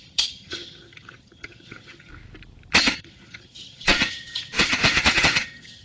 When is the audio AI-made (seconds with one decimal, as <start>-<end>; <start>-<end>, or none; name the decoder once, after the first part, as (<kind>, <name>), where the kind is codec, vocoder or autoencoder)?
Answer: 0.0-2.1 (vocoder, HiFi-GAN); 2.8-5.8